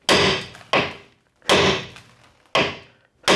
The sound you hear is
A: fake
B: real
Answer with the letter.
B